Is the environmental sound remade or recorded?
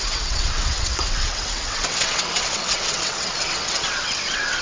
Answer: remade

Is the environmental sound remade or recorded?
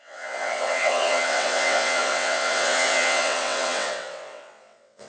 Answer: remade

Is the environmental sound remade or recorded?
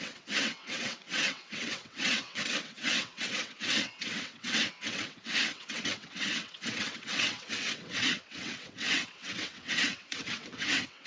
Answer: remade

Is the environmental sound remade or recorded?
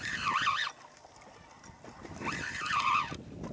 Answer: recorded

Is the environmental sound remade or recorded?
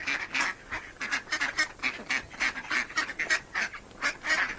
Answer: recorded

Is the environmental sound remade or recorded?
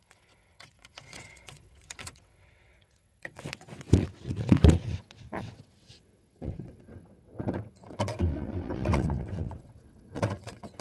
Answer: remade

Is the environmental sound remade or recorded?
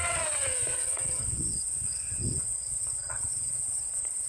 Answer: remade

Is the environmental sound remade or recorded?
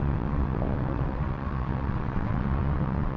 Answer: remade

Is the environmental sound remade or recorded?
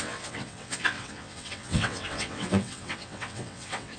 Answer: remade